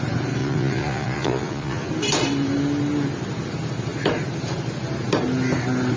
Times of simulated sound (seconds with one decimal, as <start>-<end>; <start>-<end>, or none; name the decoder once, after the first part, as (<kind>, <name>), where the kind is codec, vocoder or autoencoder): 0.4-1.9 (vocoder, Vocos)